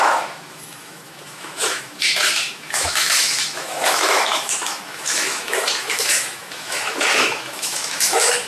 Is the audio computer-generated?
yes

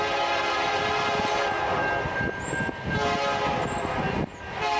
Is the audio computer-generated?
no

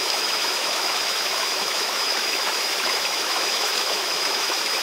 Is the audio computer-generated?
yes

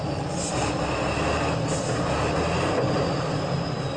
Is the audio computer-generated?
no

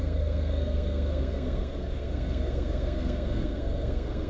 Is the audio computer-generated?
yes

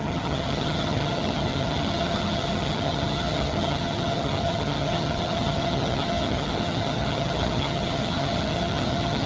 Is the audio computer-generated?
yes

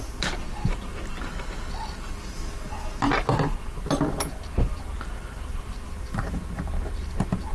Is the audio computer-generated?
no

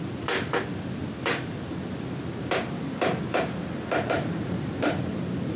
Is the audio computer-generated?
no